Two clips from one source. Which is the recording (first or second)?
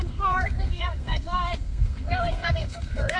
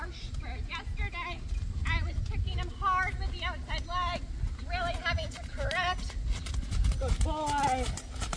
second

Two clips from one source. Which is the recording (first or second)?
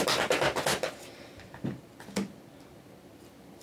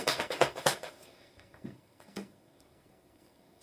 first